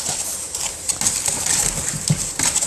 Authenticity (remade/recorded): recorded